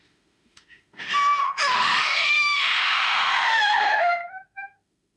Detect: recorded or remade remade